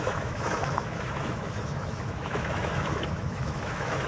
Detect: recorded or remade remade